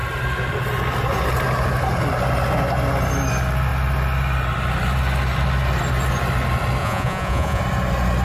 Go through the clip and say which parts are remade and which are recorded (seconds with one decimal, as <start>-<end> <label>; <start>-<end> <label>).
0.0-6.8 recorded; 6.8-7.6 remade; 7.6-8.2 recorded